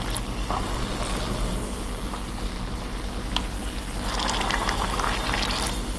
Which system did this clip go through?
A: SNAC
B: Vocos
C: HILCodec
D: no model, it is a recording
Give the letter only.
D